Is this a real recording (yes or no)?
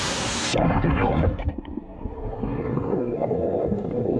no